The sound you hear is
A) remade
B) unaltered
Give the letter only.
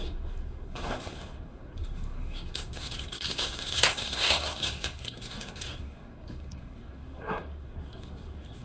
A